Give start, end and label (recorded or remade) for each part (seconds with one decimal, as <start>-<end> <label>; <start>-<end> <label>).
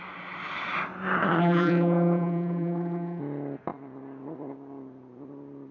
0.0-1.4 recorded; 1.4-3.2 remade; 3.2-5.7 recorded